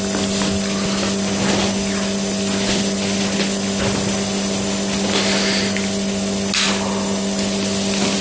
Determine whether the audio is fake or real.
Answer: real